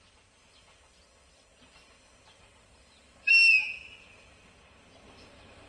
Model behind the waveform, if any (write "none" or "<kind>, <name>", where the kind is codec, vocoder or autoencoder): none